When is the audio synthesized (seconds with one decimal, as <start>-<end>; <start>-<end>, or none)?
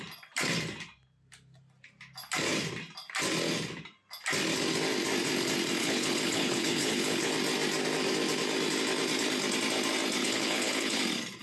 5.8-7.3; 10.2-11.0